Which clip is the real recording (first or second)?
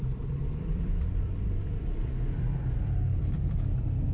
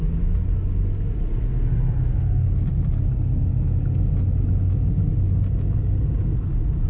second